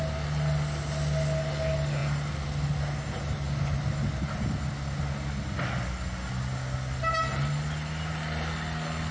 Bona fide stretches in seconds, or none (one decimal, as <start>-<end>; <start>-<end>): 0.0-9.1